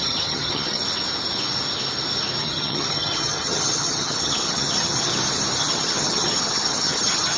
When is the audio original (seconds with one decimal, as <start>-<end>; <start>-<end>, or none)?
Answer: 0.8-2.4; 5.1-5.6

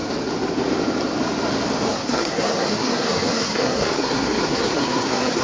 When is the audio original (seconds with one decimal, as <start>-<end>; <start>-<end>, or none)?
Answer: 0.0-1.9